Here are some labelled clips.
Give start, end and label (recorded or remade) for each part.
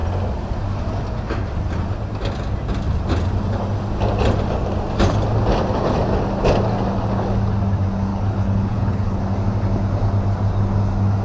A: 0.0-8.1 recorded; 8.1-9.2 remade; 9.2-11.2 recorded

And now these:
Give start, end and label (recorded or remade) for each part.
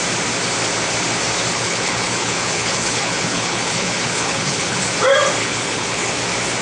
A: 0.0-1.5 recorded; 1.5-4.8 remade; 4.8-5.4 recorded; 5.4-6.1 remade; 6.1-6.6 recorded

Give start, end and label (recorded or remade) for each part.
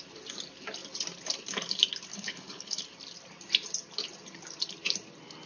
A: 0.0-2.1 recorded; 2.1-2.8 remade; 2.8-5.5 recorded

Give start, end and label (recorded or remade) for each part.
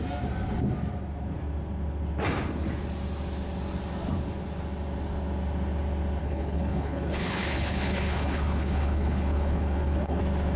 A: 0.0-6.2 recorded; 6.2-10.2 remade; 10.2-10.6 recorded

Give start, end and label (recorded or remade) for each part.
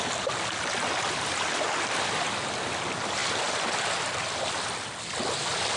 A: 0.0-5.8 recorded